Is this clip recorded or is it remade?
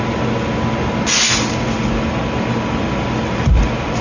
recorded